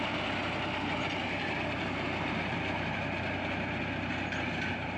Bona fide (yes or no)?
yes